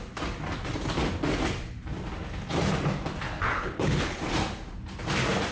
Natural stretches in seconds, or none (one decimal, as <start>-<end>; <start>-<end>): 0.0-3.5; 4.2-5.5